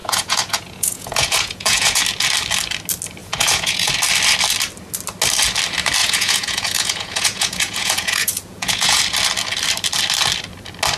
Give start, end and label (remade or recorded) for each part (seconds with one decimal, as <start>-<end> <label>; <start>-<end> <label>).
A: 0.0-2.0 remade; 2.0-3.2 recorded; 3.2-3.9 remade; 3.9-6.0 recorded; 6.0-9.0 remade; 9.0-11.0 recorded